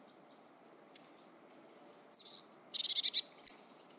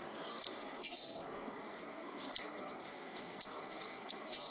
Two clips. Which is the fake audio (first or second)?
second